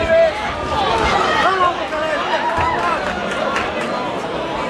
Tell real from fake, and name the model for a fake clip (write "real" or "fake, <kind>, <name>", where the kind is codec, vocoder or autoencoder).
real